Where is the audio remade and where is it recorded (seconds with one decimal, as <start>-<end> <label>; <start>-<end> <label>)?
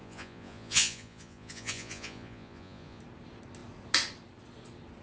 0.0-3.0 remade; 3.0-5.0 recorded